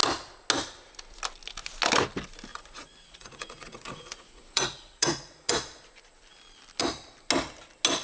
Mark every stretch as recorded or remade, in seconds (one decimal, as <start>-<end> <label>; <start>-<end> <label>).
0.0-2.5 recorded; 2.5-5.5 remade; 5.5-8.0 recorded